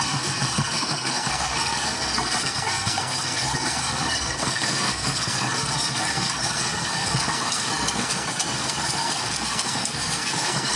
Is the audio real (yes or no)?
no